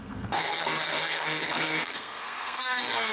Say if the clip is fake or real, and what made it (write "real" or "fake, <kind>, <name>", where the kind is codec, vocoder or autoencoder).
fake, codec, SNAC